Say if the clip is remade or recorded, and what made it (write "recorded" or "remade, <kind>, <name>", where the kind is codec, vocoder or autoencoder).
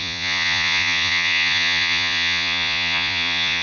remade, vocoder, Vocos